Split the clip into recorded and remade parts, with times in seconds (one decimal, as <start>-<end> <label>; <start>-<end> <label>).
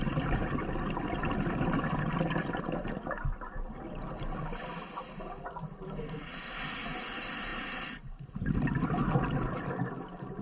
0.0-10.4 recorded